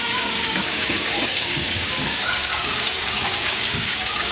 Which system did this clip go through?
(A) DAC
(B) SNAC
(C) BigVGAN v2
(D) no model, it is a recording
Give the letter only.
A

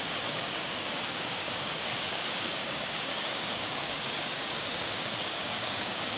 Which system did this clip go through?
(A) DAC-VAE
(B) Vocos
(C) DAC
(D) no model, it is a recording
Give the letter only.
C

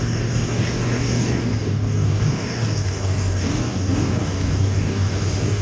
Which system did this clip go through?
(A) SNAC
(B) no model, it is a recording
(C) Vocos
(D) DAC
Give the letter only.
D